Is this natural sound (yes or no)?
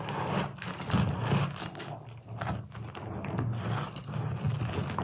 yes